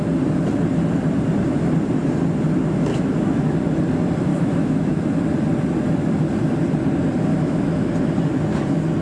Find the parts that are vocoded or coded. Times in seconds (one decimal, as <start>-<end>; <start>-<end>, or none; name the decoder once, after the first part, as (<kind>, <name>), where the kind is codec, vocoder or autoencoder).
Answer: 2.9-3.5 (autoencoder, DAC-VAE); 4.3-5.0; 7.3-7.9